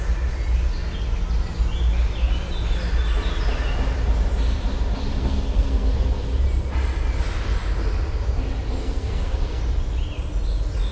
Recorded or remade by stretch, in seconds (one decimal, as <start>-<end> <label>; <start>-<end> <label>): 0.0-5.1 recorded; 5.1-6.1 remade; 6.1-8.8 recorded; 8.8-9.6 remade; 9.6-10.9 recorded